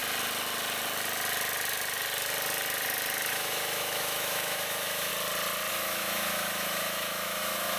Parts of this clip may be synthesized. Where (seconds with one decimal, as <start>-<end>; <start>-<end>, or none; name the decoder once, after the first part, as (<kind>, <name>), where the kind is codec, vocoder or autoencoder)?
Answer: 3.3-5.1 (autoencoder, DAC-VAE); 5.7-7.8